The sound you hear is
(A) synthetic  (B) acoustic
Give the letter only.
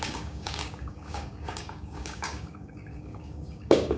A